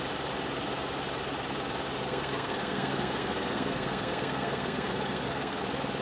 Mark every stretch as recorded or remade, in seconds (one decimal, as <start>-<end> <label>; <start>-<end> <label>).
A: 0.0-2.0 recorded; 2.0-5.6 remade; 5.6-6.0 recorded